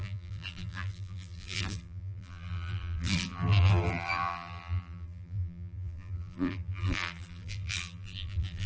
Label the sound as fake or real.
fake